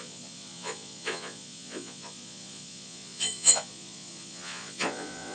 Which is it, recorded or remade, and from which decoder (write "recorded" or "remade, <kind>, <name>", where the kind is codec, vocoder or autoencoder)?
remade, vocoder, Vocos